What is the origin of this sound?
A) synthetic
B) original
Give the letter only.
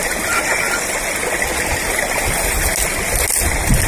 B